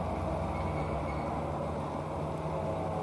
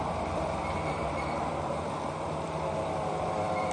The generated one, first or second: second